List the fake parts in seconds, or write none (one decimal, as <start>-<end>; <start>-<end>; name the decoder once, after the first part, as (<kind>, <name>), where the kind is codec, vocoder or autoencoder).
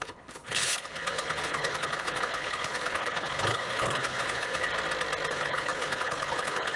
0.0-4.7 (codec, HILCodec); 5.3-6.8